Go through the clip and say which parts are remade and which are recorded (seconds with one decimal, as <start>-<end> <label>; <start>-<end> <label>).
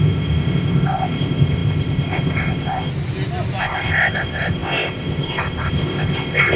0.0-2.9 remade; 2.9-3.6 recorded; 3.6-6.6 remade